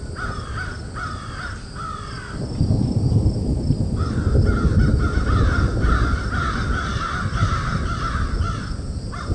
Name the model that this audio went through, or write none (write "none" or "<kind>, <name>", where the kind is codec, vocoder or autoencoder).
none